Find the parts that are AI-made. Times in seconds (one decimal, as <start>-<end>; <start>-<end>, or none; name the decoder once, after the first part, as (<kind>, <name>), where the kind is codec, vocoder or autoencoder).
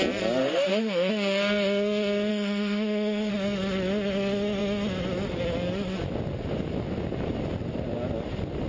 0.4-1.1 (autoencoder, DAC-VAE); 2.3-3.3